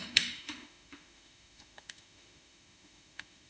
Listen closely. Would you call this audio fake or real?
fake